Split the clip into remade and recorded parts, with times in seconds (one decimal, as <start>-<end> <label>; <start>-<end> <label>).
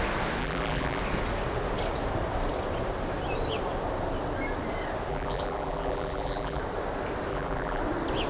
0.0-0.4 recorded; 0.4-1.0 remade; 1.0-5.1 recorded; 5.1-6.6 remade; 6.6-7.3 recorded; 7.3-7.8 remade; 7.8-8.3 recorded